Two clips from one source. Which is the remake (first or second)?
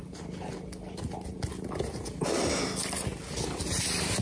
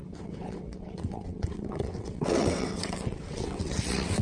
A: second